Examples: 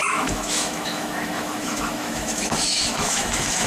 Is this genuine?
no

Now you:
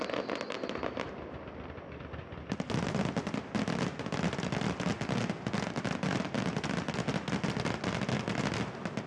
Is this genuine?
yes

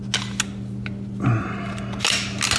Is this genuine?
yes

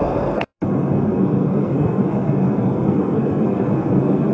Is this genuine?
no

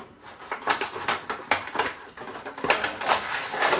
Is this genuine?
yes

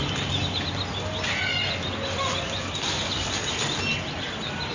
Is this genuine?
yes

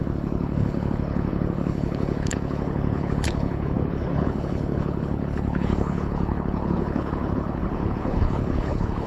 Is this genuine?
no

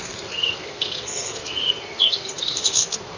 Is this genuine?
no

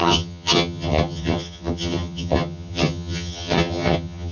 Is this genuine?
no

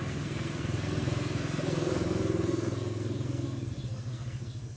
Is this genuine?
no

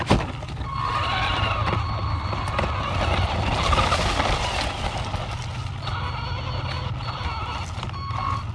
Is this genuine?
yes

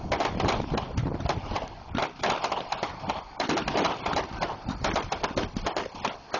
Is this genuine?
no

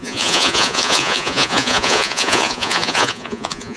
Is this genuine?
no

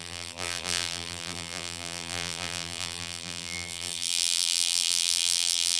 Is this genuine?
no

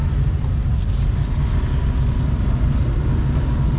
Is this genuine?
yes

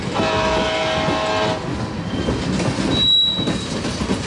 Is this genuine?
yes